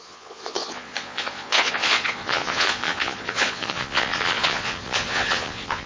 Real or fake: fake